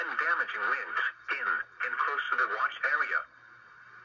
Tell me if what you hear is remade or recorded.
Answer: recorded